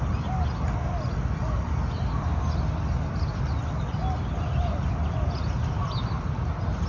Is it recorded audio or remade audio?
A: recorded